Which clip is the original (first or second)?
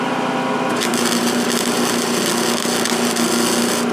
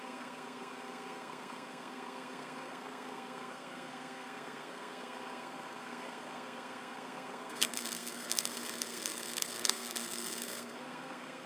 first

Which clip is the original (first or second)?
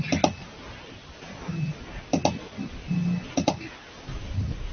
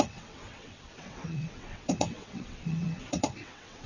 first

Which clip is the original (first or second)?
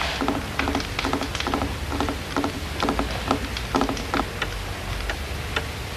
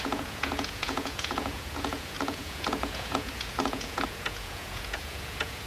first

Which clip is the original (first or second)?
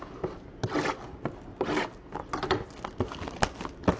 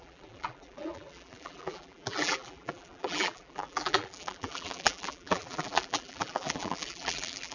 first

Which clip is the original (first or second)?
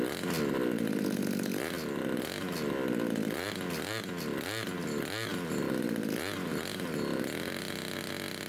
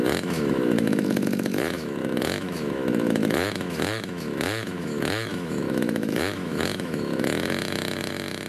first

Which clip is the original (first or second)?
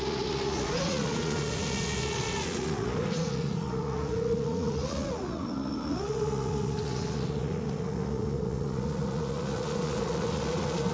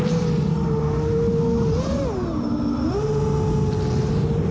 second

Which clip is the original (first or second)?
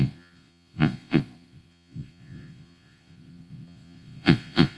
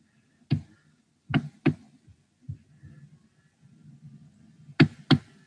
second